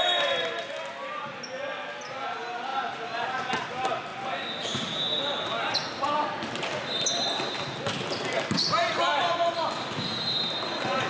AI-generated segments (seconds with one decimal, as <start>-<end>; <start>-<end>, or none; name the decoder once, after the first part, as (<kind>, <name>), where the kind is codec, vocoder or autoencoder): none